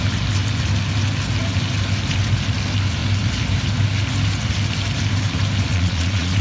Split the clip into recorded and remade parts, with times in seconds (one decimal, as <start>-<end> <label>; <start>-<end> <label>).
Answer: 0.0-5.7 recorded; 5.7-6.4 remade